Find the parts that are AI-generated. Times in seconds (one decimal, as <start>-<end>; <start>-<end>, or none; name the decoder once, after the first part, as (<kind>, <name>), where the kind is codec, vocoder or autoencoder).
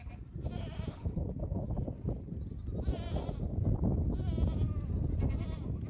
0.9-1.6 (codec, HILCodec)